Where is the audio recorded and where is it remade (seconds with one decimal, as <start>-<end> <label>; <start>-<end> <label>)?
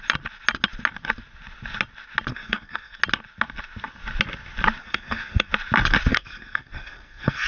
0.0-2.3 recorded; 2.3-3.0 remade; 3.0-4.8 recorded; 4.8-5.5 remade; 5.5-6.1 recorded; 6.1-7.5 remade